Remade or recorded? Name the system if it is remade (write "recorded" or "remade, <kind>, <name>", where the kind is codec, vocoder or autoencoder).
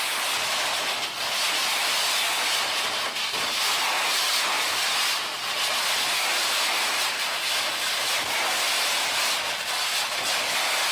recorded